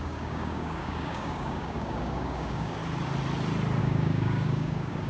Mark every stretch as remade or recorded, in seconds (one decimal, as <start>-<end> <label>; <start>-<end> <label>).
0.0-2.8 remade; 2.8-3.8 recorded; 3.8-5.1 remade